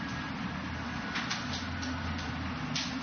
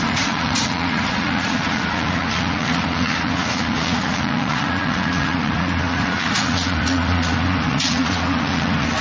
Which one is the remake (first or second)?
second